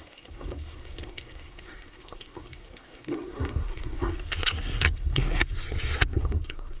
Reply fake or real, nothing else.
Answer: fake